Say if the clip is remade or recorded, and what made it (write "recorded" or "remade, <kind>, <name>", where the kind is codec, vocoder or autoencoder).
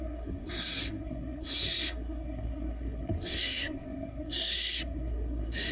remade, codec, SNAC